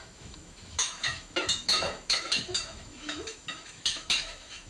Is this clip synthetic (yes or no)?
yes